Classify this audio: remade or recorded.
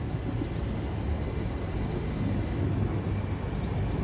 recorded